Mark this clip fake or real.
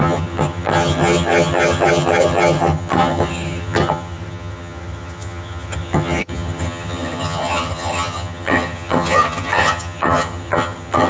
fake